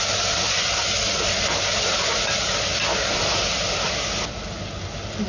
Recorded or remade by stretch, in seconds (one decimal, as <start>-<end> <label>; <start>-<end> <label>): 0.0-5.3 recorded